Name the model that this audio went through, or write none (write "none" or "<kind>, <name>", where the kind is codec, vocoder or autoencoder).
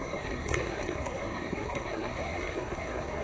codec, SNAC